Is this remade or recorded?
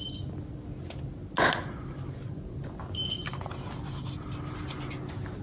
recorded